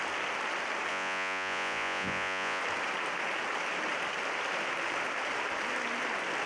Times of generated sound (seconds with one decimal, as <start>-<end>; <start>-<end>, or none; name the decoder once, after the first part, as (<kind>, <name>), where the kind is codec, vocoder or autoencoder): 0.9-2.6 (vocoder, Vocos)